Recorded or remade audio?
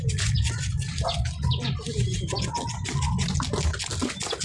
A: recorded